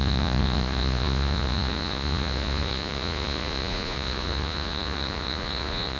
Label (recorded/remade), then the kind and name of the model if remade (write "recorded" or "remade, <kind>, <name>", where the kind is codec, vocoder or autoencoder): remade, vocoder, Vocos